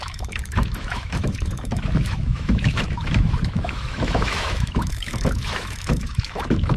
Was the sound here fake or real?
fake